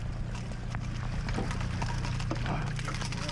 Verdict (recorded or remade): recorded